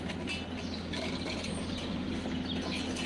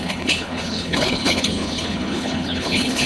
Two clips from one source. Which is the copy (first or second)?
second